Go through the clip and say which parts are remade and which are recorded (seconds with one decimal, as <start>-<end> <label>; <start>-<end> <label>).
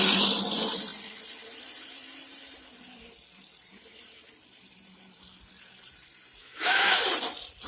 0.0-6.4 recorded; 6.4-7.0 remade; 7.0-7.7 recorded